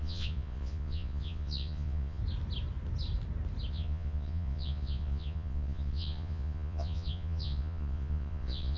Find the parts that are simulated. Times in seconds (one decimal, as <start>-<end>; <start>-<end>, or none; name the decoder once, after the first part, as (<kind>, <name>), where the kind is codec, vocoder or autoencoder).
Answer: 0.0-2.2 (vocoder, Vocos); 3.7-8.8